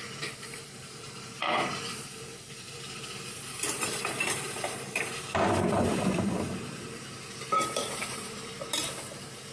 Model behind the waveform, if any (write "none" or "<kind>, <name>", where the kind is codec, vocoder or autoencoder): vocoder, BigVGAN v2